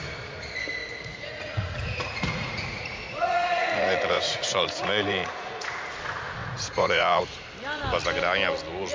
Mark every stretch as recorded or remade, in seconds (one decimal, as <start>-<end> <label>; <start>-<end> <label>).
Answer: 0.0-0.8 recorded; 0.8-5.9 remade; 5.9-6.4 recorded; 6.4-7.2 remade; 7.2-8.9 recorded